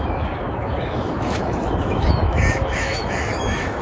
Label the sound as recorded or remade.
remade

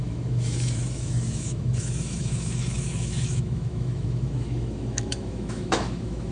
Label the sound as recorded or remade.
remade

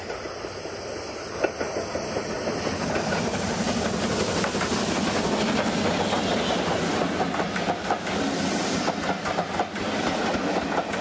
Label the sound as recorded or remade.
recorded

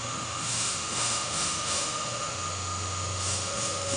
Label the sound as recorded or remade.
remade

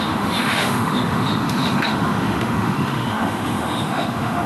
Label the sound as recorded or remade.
remade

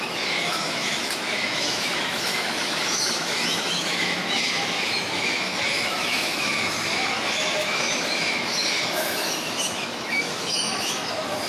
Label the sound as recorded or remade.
remade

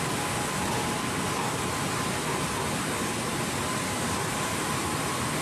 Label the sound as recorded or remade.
recorded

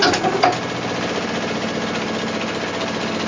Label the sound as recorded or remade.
recorded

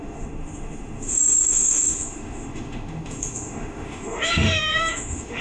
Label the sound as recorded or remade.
remade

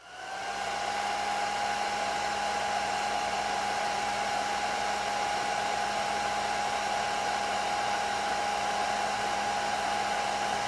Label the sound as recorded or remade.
recorded